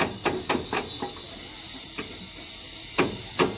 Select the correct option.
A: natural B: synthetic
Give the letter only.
A